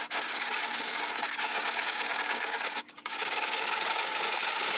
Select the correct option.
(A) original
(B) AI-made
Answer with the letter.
B